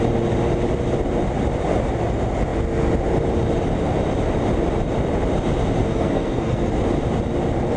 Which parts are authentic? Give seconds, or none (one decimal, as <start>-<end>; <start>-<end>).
0.0-5.8; 6.7-7.8